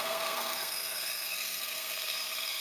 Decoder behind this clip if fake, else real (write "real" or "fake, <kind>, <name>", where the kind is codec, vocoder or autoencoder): fake, codec, SNAC